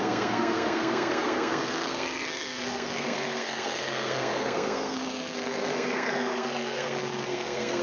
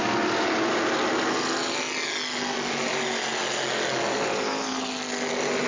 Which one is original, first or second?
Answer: second